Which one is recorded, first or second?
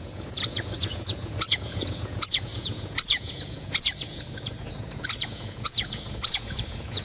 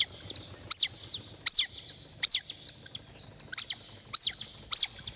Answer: second